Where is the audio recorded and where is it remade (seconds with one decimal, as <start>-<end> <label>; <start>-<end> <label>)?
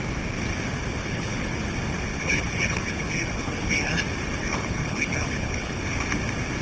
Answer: 0.0-1.0 recorded; 1.0-1.6 remade; 1.6-2.1 recorded; 2.1-3.9 remade; 3.9-4.4 recorded; 4.4-5.8 remade; 5.8-6.6 recorded